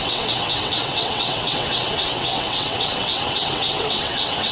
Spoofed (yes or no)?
yes